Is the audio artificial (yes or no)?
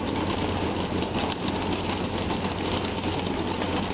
no